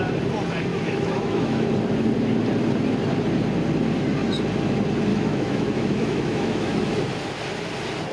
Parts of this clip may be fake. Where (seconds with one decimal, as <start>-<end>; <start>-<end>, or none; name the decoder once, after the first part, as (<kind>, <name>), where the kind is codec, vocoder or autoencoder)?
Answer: 0.7-1.7 (autoencoder, DAC-VAE); 5.1-7.0